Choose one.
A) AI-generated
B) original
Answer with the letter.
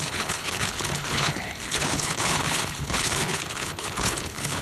A